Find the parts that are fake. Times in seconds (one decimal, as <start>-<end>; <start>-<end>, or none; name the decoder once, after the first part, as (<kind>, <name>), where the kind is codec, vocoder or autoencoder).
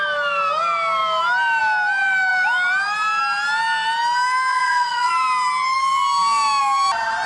4.5-5.1 (vocoder, Vocos)